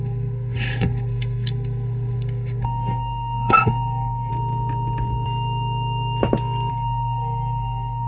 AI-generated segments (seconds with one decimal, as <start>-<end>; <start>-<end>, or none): 0.0-4.3; 6.7-8.1